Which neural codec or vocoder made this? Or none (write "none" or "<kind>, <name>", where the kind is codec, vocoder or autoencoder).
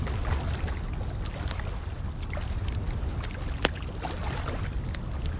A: none